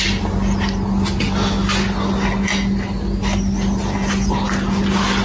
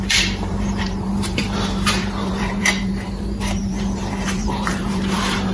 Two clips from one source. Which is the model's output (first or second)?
second